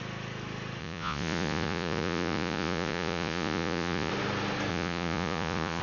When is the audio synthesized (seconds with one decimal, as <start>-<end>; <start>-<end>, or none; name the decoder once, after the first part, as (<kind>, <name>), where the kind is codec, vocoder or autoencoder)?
0.8-4.1 (vocoder, Vocos); 4.7-5.8

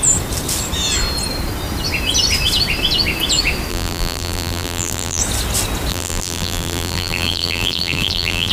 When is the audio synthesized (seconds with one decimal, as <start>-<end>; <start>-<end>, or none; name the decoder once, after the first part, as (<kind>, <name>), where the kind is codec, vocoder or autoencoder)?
3.7-5.2 (vocoder, BigVGAN v2); 5.9-8.5

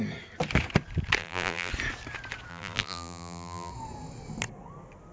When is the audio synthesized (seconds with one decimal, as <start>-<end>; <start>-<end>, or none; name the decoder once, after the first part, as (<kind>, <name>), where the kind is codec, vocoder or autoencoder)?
1.2-1.7 (vocoder, BigVGAN v2); 2.5-3.7